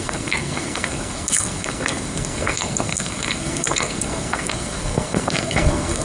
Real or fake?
fake